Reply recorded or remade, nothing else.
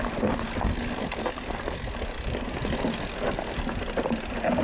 recorded